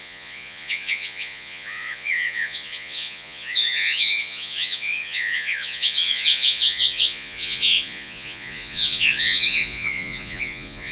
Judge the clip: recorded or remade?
remade